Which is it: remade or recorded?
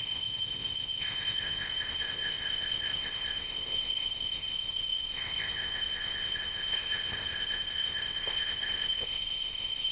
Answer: remade